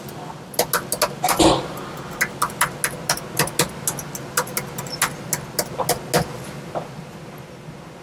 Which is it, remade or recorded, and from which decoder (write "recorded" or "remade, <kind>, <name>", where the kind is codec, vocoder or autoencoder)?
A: recorded